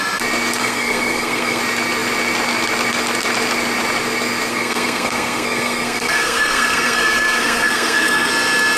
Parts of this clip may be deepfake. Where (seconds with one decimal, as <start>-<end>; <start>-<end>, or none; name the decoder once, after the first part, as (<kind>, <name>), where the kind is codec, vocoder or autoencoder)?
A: 0.6-1.6 (codec, SNAC); 4.5-8.3